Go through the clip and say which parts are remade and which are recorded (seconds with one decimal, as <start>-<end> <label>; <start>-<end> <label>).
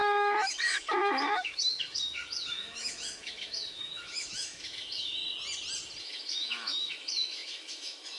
0.0-5.2 remade; 5.2-6.0 recorded; 6.0-8.2 remade